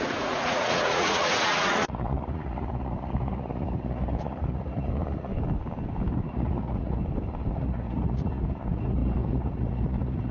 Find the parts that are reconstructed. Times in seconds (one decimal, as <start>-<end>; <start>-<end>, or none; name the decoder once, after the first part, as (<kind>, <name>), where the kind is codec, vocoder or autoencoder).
0.0-5.3 (vocoder, Vocos); 6.3-7.0; 7.5-10.3